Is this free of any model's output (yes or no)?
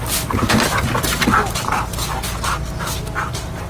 yes